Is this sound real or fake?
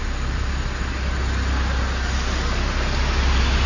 real